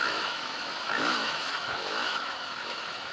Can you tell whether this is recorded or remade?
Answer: remade